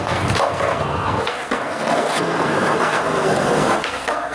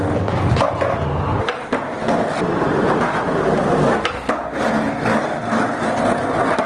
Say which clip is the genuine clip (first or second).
second